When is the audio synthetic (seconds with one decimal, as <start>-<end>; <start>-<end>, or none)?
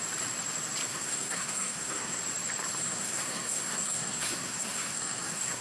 0.9-2.2; 2.8-5.6